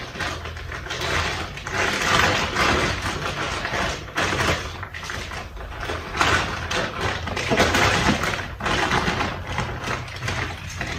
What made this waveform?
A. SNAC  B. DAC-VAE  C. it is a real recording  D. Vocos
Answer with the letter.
C